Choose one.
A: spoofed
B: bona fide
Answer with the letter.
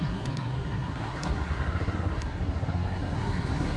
A